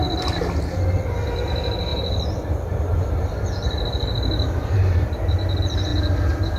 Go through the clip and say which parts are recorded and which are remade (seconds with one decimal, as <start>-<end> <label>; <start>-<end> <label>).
0.0-1.9 recorded; 1.9-5.1 remade; 5.1-6.6 recorded